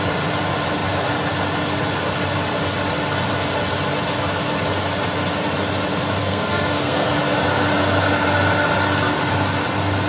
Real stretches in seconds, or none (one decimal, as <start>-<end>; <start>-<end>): 0.0-6.2; 7.1-10.1